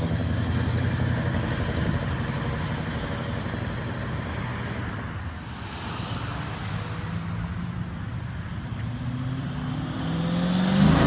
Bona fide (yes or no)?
yes